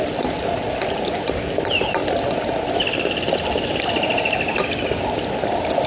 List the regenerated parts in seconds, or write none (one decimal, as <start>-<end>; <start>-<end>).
none